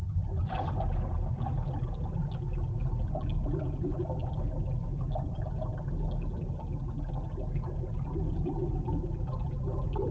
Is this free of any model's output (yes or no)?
yes